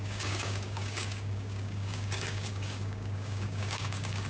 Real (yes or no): no